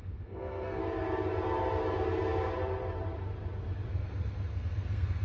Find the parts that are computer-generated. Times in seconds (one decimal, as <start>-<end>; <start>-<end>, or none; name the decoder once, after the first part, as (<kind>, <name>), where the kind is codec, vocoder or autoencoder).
0.0-0.8 (codec, SNAC); 3.9-5.2